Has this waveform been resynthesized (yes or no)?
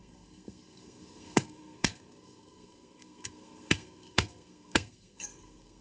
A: yes